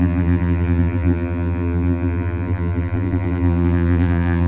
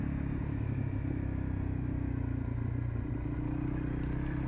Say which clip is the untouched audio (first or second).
second